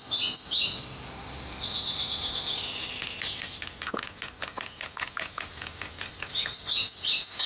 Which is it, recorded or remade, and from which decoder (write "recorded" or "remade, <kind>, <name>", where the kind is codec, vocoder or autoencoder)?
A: recorded